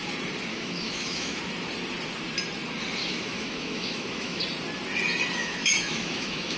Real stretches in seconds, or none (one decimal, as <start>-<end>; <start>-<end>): 0.0-0.5; 1.4-3.0; 4.4-5.4